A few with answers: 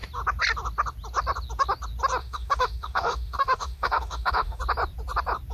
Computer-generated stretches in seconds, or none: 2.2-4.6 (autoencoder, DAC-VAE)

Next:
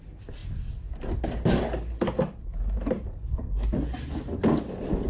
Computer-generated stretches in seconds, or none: none

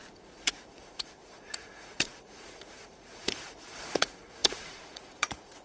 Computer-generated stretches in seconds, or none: 0.0-5.6 (vocoder, Vocos)

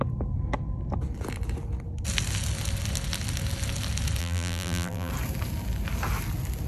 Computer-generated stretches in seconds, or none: 4.2-5.1 (vocoder, BigVGAN v2)

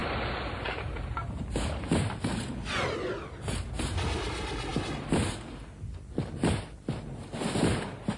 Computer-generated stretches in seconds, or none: none

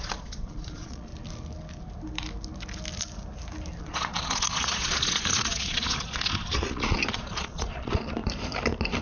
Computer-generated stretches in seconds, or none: 0.0-1.1 (vocoder, Vocos); 3.8-8.2

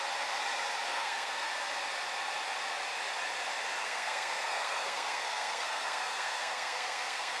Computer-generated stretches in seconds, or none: 0.9-1.5 (codec, SNAC); 3.8-7.4

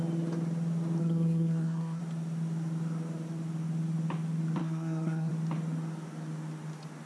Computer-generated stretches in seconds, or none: 1.0-2.0 (codec, SNAC); 4.6-5.3